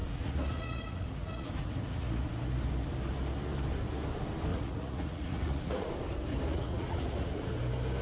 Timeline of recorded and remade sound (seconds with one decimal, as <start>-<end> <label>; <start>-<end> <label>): 0.0-2.3 remade; 2.3-4.5 recorded; 4.5-5.9 remade; 5.9-6.5 recorded; 6.5-7.5 remade; 7.5-8.0 recorded